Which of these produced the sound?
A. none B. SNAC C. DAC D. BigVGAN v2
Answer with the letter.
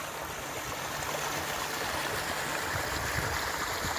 A